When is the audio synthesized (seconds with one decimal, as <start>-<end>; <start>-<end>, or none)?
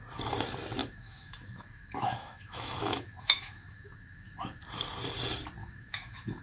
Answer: 0.8-4.6; 5.6-6.4